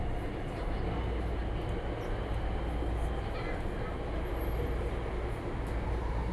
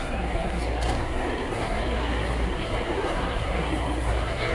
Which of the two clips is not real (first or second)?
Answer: second